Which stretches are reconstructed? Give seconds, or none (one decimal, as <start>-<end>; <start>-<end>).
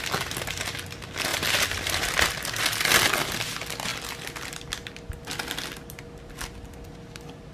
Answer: 1.3-3.0